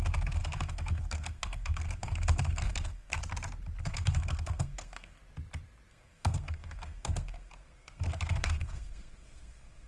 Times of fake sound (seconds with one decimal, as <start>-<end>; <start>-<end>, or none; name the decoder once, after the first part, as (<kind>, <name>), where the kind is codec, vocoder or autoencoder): 0.0-3.2 (codec, SNAC); 3.8-5.2; 5.9-9.9